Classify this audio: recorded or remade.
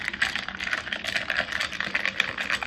recorded